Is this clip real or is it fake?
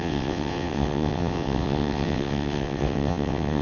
fake